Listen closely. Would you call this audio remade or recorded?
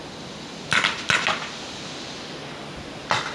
recorded